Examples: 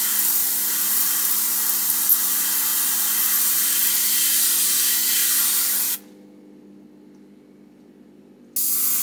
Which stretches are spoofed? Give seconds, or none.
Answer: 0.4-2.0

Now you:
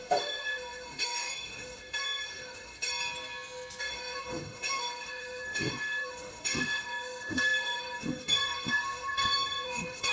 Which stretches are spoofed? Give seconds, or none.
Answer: 0.0-2.9; 3.8-10.1

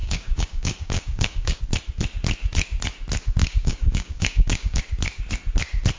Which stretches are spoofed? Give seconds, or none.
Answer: 0.0-1.6; 3.4-4.8

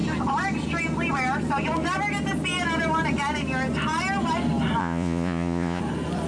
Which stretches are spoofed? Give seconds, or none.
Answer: 4.8-5.8

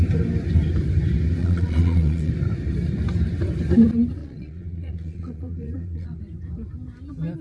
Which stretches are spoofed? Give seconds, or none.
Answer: 1.4-2.3; 4.2-6.2

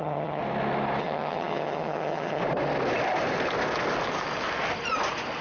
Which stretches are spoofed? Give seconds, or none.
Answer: 0.0-0.4; 1.0-2.4

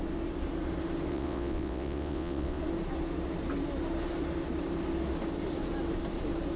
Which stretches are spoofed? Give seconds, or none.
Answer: 1.1-2.6